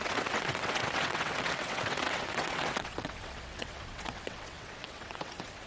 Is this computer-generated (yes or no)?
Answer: yes